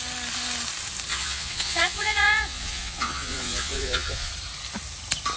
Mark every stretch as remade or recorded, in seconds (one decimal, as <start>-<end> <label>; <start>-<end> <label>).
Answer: 0.0-1.1 recorded; 1.1-4.3 remade; 4.3-5.4 recorded

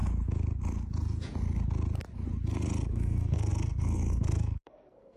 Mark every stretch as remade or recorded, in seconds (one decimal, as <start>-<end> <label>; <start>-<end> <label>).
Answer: 0.0-2.9 recorded; 2.9-5.2 remade

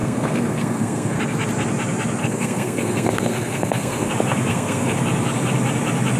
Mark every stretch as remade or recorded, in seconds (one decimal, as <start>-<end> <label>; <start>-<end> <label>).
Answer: 0.0-1.2 remade; 1.2-2.2 recorded; 2.2-4.1 remade; 4.1-4.5 recorded; 4.5-5.0 remade; 5.0-6.2 recorded

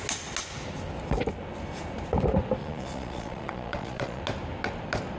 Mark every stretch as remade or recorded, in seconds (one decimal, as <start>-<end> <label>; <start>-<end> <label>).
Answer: 0.0-2.6 recorded; 2.6-4.2 remade; 4.2-5.2 recorded

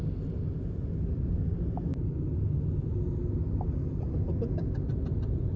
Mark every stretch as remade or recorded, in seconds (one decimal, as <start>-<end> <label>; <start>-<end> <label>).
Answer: 0.0-5.6 recorded

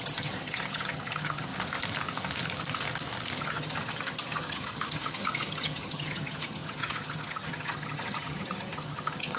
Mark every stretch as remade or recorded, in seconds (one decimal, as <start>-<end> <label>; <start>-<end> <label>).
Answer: 0.0-1.5 remade; 1.5-3.4 recorded; 3.4-9.4 remade